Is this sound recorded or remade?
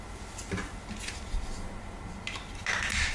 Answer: recorded